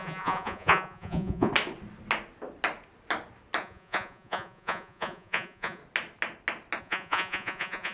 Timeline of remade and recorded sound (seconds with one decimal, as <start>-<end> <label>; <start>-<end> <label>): 0.0-1.5 remade; 1.5-3.6 recorded; 3.6-5.8 remade; 5.8-6.8 recorded; 6.8-7.9 remade